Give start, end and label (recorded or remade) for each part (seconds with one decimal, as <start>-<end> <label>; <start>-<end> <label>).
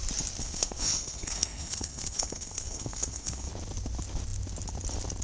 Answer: 0.0-0.4 recorded; 0.4-3.5 remade; 3.5-5.2 recorded